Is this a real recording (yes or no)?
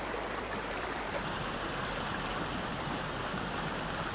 yes